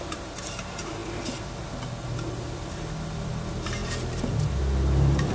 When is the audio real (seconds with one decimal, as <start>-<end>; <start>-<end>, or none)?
0.0-5.3